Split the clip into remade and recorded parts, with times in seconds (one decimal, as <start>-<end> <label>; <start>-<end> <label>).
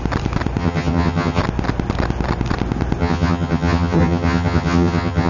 0.0-0.6 recorded; 0.6-1.4 remade; 1.4-3.0 recorded; 3.0-5.3 remade